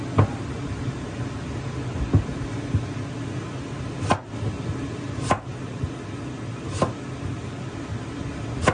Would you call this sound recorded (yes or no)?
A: yes